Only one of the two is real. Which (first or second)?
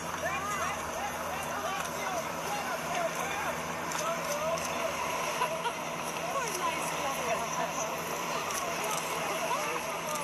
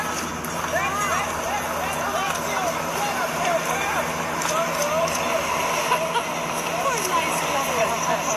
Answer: second